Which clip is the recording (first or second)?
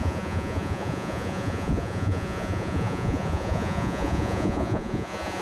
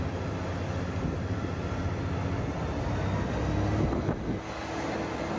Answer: second